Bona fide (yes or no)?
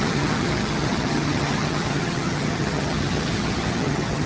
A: no